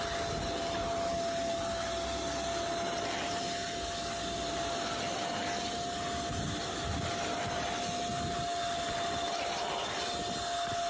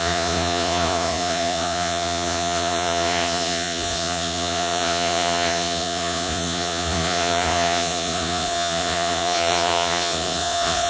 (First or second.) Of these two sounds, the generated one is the second